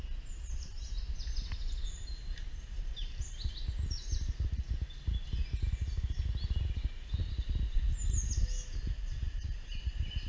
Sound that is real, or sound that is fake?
real